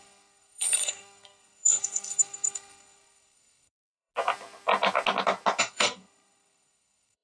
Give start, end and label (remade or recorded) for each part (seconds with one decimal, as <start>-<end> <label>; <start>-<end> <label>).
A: 0.0-4.1 remade; 4.1-5.6 recorded; 5.6-7.2 remade